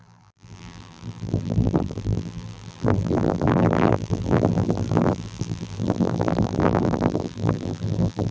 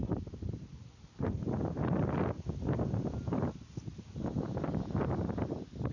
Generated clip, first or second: first